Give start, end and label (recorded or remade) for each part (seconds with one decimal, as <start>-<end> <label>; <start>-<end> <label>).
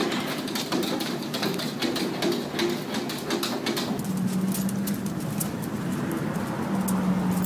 0.0-2.0 remade; 2.0-5.0 recorded; 5.0-6.4 remade; 6.4-7.5 recorded